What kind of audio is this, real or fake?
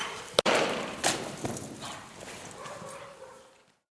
real